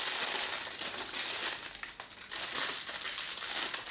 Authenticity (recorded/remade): recorded